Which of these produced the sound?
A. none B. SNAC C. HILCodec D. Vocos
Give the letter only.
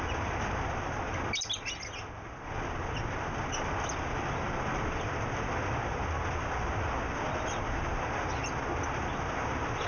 A